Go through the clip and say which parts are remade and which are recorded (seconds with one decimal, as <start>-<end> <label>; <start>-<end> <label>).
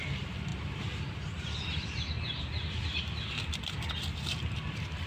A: 0.0-5.1 recorded